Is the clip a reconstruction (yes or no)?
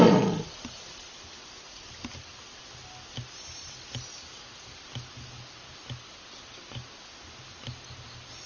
no